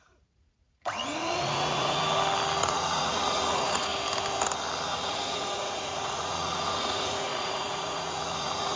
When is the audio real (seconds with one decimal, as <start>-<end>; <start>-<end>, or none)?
2.0-2.6; 3.9-4.9